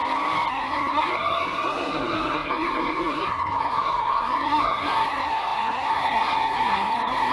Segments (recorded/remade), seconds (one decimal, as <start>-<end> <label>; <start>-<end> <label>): 0.0-0.5 recorded; 0.5-7.3 remade